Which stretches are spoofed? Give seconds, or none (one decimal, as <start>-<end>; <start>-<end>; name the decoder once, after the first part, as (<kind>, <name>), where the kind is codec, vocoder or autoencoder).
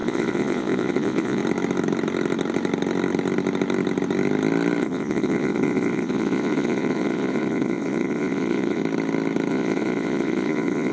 0.0-1.4 (vocoder, Vocos); 4.8-8.8; 9.5-10.9